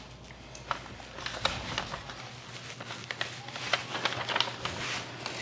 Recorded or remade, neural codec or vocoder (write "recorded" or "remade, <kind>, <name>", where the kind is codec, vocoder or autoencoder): recorded